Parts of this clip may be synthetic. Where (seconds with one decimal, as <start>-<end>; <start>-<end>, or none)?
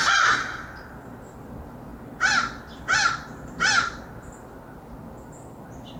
none